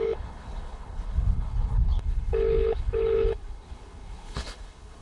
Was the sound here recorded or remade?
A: remade